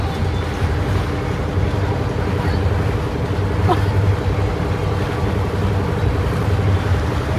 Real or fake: real